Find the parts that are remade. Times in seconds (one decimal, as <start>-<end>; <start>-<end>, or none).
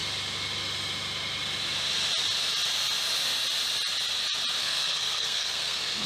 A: 4.6-6.1